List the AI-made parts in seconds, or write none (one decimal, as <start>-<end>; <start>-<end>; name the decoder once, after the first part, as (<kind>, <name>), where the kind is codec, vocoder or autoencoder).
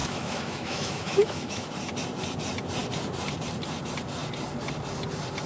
0.0-1.7 (autoencoder, DAC-VAE)